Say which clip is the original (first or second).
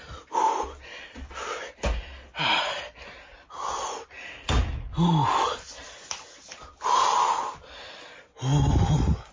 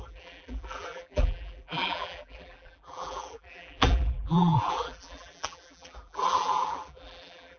first